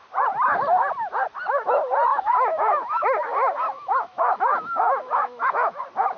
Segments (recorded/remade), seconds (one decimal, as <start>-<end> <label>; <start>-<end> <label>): 0.0-2.1 recorded; 2.1-5.8 remade; 5.8-6.2 recorded